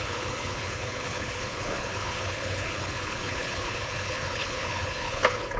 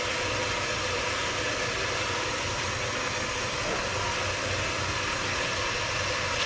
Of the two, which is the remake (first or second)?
first